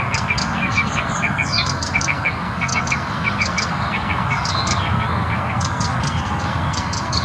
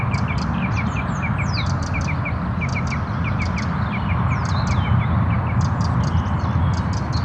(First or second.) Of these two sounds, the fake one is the first